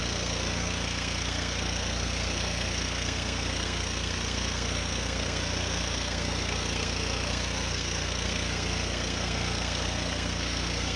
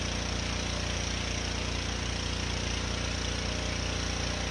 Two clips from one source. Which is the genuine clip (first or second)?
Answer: second